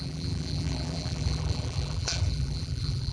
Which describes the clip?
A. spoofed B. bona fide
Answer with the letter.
A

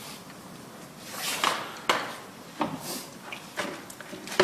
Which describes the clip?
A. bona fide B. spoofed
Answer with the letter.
A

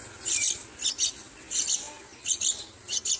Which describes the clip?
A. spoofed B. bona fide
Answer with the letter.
B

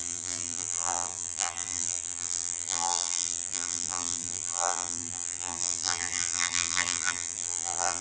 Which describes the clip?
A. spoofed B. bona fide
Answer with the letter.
A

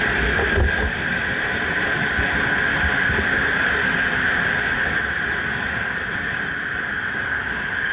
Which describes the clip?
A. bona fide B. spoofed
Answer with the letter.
A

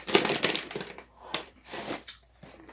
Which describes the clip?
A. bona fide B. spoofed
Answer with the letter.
B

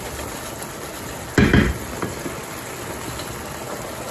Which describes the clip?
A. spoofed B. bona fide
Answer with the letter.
B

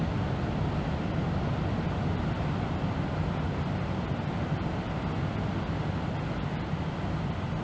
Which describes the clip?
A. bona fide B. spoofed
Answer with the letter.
A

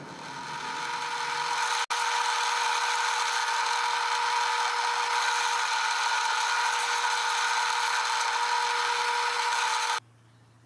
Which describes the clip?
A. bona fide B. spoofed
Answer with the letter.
A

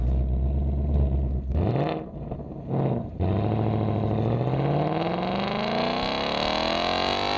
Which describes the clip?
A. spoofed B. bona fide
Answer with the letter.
B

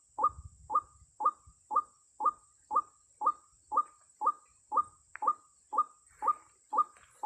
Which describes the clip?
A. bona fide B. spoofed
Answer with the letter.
A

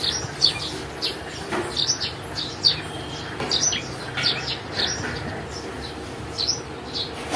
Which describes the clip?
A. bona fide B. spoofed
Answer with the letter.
A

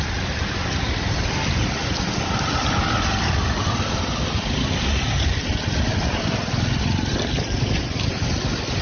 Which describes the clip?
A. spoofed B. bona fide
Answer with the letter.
A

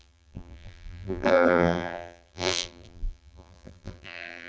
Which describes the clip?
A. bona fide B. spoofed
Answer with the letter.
B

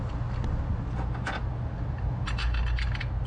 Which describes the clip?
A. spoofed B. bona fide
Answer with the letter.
B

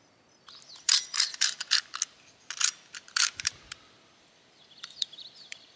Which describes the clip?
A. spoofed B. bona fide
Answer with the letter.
A